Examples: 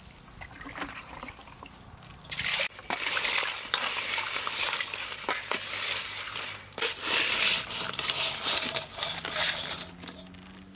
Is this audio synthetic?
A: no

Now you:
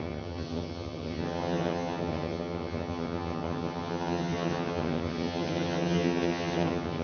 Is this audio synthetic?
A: yes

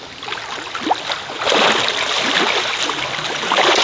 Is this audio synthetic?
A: no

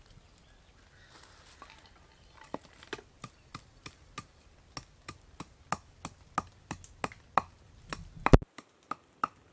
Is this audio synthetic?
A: no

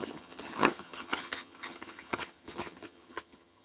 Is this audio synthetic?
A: yes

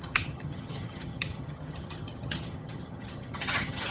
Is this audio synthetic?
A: yes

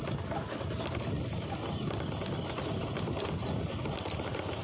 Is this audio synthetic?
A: no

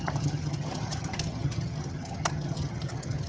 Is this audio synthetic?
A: yes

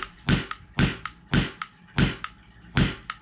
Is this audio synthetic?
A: no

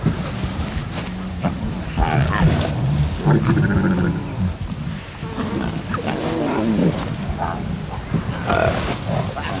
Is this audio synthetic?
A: no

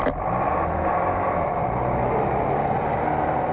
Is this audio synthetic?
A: no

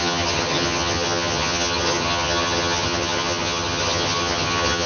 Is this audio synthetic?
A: yes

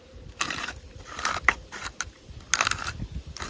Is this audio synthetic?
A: no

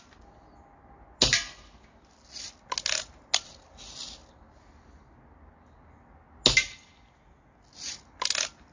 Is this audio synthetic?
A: no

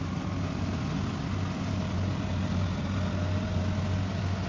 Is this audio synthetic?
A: no